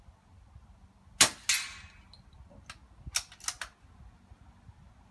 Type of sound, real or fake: real